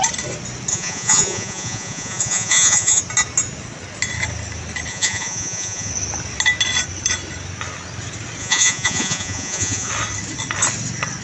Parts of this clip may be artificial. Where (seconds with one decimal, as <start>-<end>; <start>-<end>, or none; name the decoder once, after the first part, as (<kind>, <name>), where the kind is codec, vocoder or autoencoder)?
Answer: 0.7-3.0 (vocoder, Vocos); 4.9-5.9; 8.4-9.9